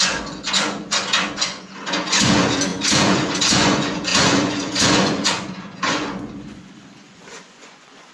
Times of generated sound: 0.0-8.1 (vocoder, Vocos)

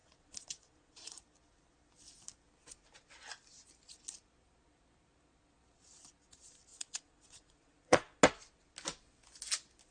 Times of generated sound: 0.0-1.2 (vocoder, Vocos); 6.7-8.2

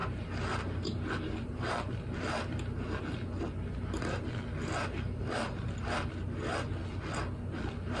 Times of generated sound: none

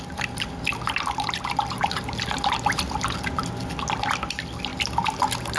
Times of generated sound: none